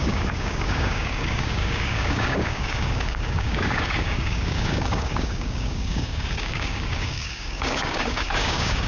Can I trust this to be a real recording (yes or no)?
no